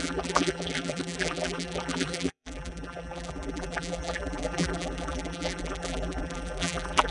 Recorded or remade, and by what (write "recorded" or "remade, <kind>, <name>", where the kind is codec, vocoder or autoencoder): remade, vocoder, BigVGAN v2